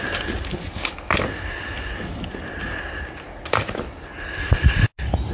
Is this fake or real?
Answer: real